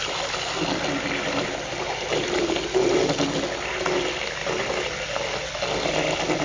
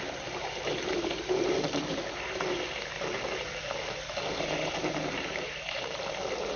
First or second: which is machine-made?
second